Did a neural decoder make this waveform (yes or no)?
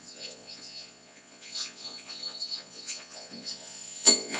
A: yes